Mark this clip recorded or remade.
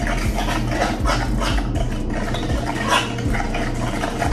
recorded